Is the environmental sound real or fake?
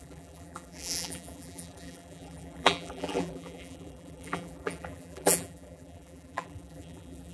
fake